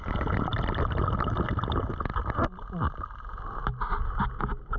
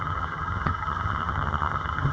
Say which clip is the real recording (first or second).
first